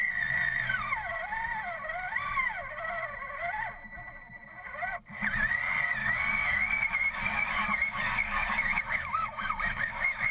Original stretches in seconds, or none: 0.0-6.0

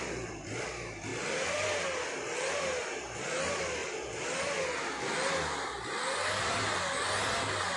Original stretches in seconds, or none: 0.0-7.8

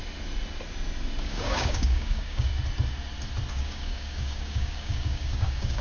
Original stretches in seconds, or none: 0.0-1.2; 2.5-3.5